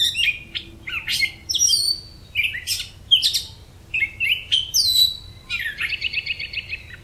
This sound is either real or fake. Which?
real